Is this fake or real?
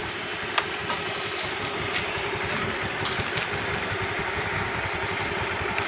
real